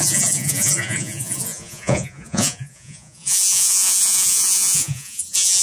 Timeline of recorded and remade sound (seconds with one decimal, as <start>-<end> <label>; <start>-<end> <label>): 0.0-5.6 remade